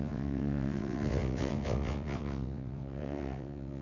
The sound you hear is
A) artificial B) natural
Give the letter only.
A